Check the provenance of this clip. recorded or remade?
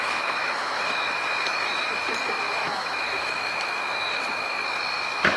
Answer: remade